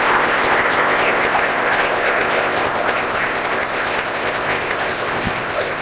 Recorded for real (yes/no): no